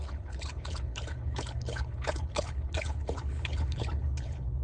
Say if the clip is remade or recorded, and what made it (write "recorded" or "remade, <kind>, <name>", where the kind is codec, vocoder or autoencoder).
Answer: remade, codec, HILCodec